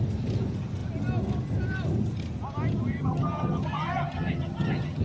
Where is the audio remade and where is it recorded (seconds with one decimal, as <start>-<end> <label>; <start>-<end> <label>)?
0.0-2.9 recorded; 2.9-5.0 remade